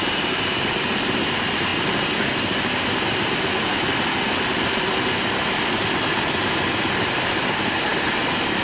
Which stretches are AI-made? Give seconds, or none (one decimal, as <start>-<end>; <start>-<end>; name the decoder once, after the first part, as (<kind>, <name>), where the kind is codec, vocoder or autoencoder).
0.0-1.7 (vocoder, BigVGAN v2); 6.1-7.9